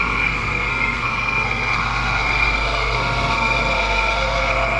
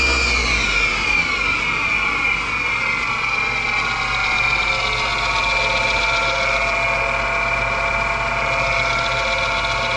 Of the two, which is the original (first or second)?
second